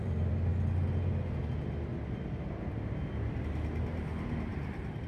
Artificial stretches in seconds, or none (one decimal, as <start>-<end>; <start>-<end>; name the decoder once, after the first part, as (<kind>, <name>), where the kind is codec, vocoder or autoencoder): 0.0-0.5 (vocoder, BigVGAN v2); 3.6-5.1